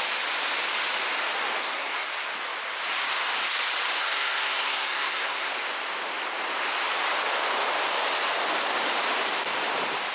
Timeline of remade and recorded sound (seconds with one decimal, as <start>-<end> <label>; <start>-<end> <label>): 0.0-1.6 recorded; 1.6-2.1 remade; 2.1-4.0 recorded; 4.0-5.5 remade; 5.5-10.1 recorded